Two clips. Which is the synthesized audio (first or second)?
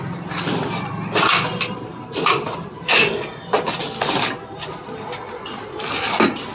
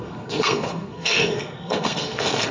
second